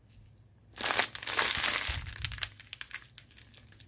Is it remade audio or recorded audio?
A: recorded